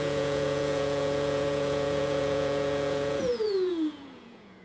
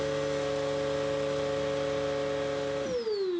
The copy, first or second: first